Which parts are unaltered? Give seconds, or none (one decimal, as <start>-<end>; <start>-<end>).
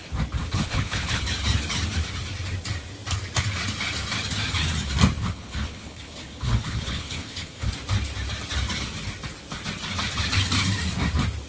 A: 0.0-0.4; 1.2-5.2; 7.7-11.5